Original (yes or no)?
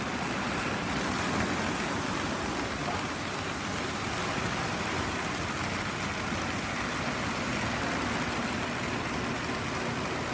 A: yes